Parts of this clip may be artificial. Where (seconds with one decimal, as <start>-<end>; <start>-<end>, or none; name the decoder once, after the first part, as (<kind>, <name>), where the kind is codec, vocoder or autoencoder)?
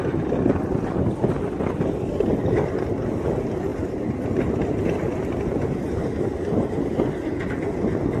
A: none